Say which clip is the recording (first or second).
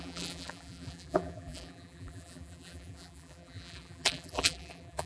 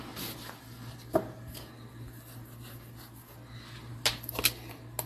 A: second